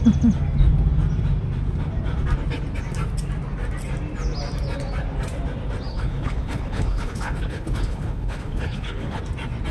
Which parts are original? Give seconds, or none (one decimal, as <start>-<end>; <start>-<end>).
0.0-5.9; 9.2-9.7